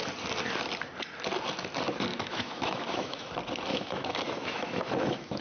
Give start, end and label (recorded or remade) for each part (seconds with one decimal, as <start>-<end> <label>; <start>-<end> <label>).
0.0-2.1 recorded; 2.1-3.3 remade; 3.3-3.7 recorded; 3.7-5.4 remade